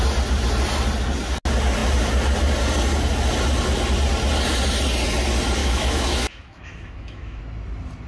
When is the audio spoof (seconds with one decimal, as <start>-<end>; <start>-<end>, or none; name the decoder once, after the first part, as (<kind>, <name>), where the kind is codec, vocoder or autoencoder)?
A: 5.6-7.4 (autoencoder, DAC-VAE)

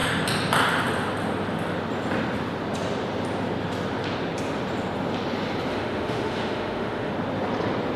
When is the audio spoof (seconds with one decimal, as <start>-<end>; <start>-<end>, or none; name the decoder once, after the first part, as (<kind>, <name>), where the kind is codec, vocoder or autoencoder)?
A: 5.7-7.1 (autoencoder, DAC-VAE)

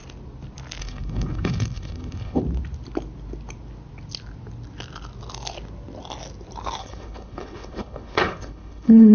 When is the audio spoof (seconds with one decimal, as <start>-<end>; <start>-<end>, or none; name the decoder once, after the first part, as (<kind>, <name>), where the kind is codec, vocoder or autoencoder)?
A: 0.8-2.4 (codec, HILCodec); 6.8-9.1